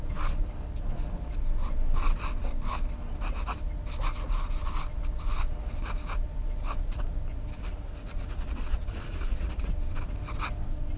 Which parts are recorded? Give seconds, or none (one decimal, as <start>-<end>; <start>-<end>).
0.0-7.7; 9.7-11.0